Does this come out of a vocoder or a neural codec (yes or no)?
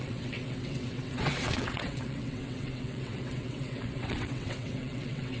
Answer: yes